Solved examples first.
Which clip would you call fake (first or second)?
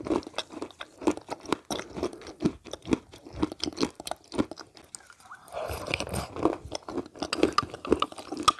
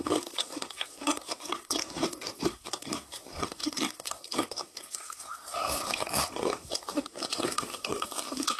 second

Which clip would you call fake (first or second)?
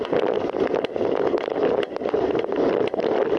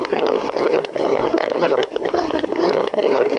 second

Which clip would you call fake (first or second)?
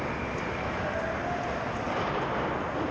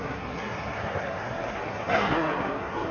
second